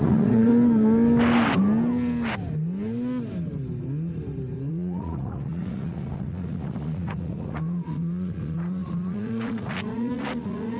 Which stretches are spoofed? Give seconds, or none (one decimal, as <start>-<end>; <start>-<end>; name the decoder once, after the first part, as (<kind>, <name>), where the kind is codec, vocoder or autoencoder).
0.0-0.5 (vocoder, Vocos); 4.7-10.8